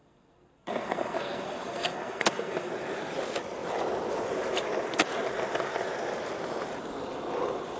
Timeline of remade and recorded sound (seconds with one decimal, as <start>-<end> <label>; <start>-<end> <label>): 0.0-2.7 remade; 2.7-7.8 recorded